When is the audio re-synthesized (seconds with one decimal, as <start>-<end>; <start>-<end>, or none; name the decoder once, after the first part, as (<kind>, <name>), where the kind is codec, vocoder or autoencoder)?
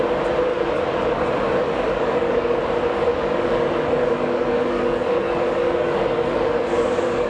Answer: 0.5-2.6 (codec, DAC); 3.1-7.3